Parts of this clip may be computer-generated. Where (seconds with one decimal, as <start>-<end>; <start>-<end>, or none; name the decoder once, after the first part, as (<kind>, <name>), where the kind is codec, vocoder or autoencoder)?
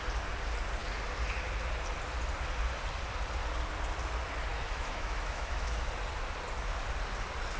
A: 4.5-5.8 (autoencoder, DAC-VAE)